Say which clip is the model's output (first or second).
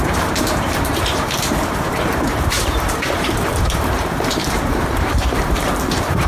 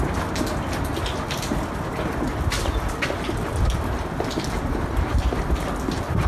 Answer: first